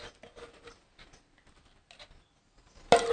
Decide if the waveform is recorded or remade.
recorded